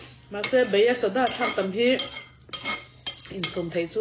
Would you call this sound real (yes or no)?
yes